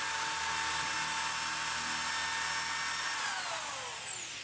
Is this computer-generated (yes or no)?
no